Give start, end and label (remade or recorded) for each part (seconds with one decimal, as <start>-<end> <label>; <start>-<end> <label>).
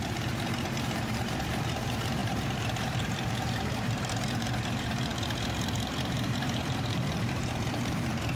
0.0-8.4 remade